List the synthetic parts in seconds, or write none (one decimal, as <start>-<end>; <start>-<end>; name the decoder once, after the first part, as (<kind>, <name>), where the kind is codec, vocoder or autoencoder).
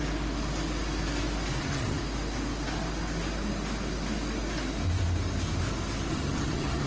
1.6-2.0 (vocoder, HiFi-GAN); 6.1-6.9